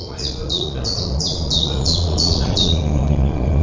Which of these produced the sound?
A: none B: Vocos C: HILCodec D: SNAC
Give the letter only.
B